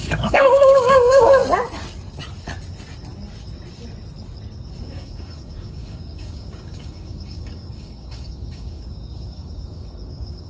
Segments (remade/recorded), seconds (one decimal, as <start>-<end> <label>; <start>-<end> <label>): 0.0-1.4 remade; 1.4-4.8 recorded; 4.8-10.5 remade